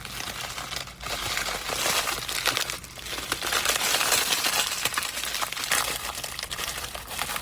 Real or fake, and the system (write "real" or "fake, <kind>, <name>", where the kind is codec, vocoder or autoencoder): real